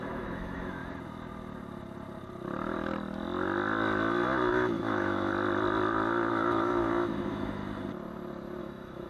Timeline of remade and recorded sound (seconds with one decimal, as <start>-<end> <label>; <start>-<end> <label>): 0.0-0.8 remade; 0.8-4.5 recorded; 4.5-5.3 remade; 5.3-6.3 recorded; 6.3-7.6 remade; 7.6-8.6 recorded; 8.6-9.1 remade